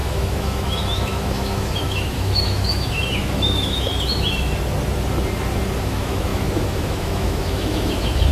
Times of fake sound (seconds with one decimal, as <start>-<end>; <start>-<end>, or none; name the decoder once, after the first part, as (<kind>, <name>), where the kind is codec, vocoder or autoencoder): 0.0-3.9 (autoencoder, DAC-VAE); 5.8-8.3